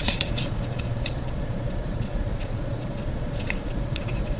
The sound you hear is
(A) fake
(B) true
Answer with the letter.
A